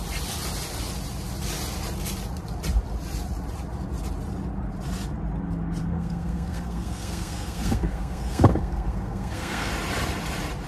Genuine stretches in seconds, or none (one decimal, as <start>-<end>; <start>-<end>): 0.0-5.8; 9.7-10.7